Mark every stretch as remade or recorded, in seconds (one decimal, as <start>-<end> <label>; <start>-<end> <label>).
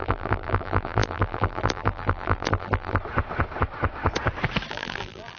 0.0-3.0 remade; 3.0-4.7 recorded; 4.7-5.4 remade